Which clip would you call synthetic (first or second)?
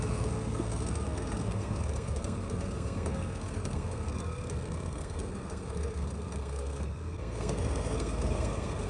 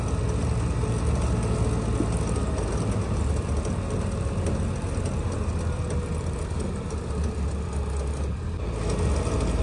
first